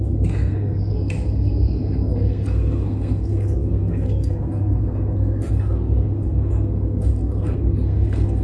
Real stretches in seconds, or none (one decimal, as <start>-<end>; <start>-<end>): none